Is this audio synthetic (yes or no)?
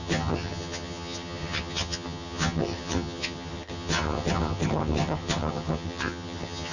yes